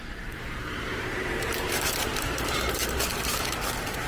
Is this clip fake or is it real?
fake